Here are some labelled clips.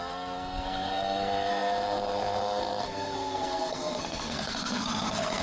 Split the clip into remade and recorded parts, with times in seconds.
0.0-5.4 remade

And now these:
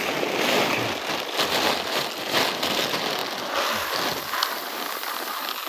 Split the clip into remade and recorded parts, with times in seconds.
0.0-5.7 recorded

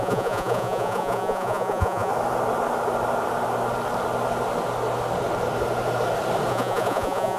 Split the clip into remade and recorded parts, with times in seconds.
0.0-2.1 remade; 2.1-6.5 recorded; 6.5-7.4 remade